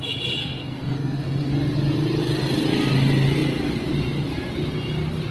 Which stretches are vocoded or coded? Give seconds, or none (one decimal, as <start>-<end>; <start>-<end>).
0.4-1.5